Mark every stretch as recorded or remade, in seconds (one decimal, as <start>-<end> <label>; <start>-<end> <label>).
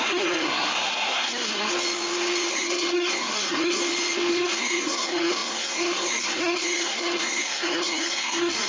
0.0-1.7 remade; 1.7-2.5 recorded; 2.5-3.8 remade; 3.8-4.3 recorded; 4.3-8.7 remade